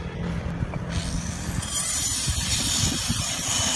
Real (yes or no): yes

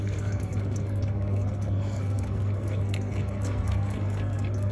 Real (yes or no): no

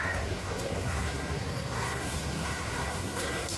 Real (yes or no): no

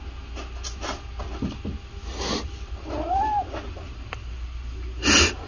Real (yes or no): yes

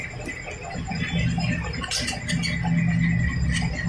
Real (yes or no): yes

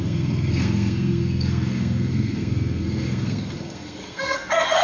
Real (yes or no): no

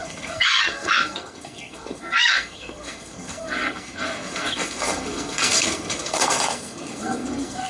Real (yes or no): no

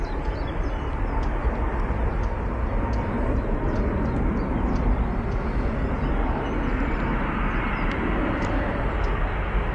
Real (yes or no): yes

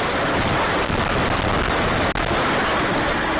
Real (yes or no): yes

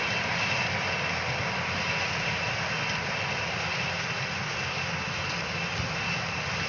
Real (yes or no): yes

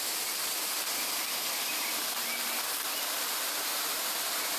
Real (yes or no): yes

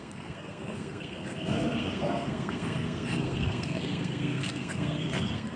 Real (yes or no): no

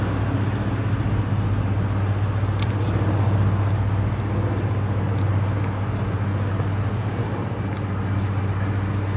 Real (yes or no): yes